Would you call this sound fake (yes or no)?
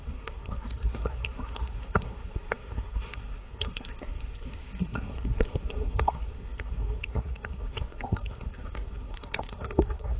yes